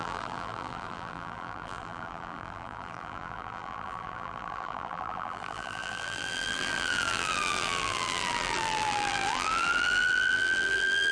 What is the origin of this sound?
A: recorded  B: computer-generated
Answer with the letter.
B